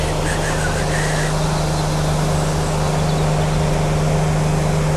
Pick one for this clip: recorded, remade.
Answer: recorded